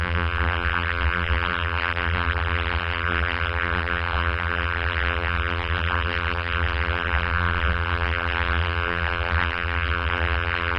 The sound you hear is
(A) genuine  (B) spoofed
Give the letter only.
B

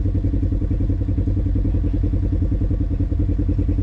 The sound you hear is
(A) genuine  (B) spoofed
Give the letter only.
A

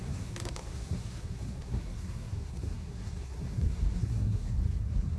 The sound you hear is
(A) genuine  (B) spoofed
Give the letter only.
B